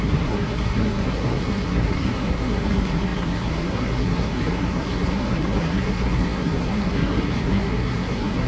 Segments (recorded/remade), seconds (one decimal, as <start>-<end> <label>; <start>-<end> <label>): 0.0-8.5 remade